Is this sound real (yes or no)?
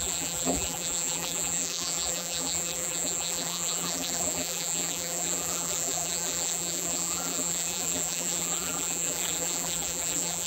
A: no